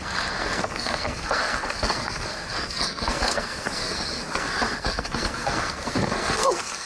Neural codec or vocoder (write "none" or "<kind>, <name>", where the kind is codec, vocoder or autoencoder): codec, SNAC